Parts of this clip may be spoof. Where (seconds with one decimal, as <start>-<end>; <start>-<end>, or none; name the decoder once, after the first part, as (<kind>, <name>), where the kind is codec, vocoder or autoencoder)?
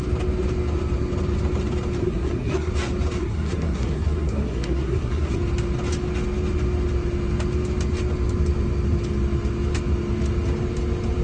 2.0-2.7 (codec, SNAC); 3.2-5.4